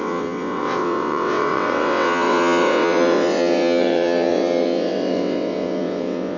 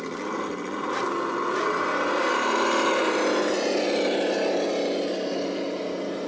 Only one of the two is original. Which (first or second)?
second